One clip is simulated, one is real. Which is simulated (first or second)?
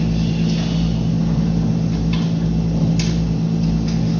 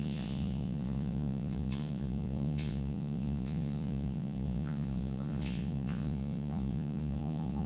second